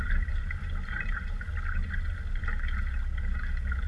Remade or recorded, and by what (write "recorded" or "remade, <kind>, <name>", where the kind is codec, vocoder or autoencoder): recorded